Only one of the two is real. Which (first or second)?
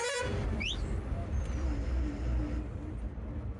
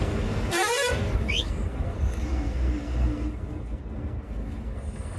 first